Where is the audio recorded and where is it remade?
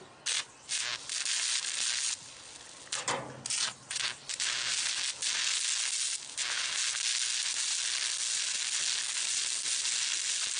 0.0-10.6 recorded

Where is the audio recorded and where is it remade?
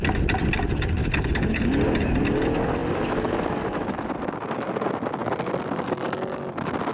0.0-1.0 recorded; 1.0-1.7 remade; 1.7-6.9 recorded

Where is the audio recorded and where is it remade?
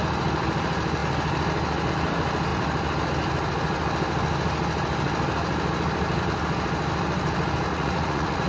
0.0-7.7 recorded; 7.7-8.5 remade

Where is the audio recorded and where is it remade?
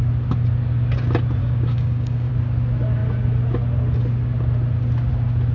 0.0-1.4 recorded; 1.4-2.3 remade; 2.3-5.5 recorded